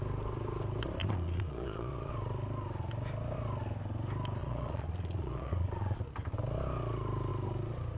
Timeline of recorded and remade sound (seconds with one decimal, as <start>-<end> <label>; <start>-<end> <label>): 0.0-1.0 recorded; 1.0-2.1 remade; 2.1-4.4 recorded; 4.4-6.0 remade; 6.0-8.0 recorded